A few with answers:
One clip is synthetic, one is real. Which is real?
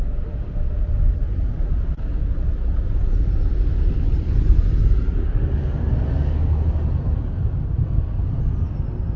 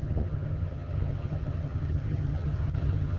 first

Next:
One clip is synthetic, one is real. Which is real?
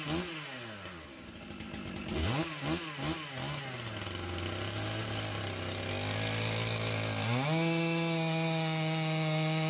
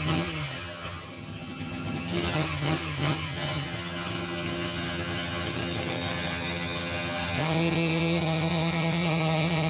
first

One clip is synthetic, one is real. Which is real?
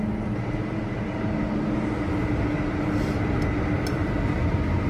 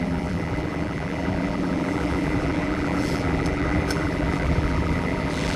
first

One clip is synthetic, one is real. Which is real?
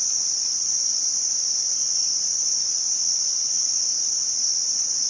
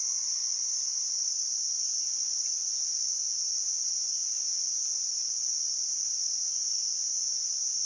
second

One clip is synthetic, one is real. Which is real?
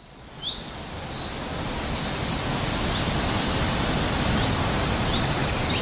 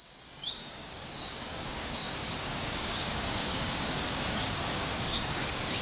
first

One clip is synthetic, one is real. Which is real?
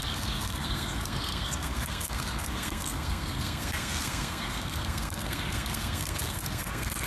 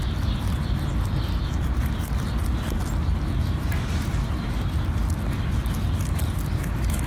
second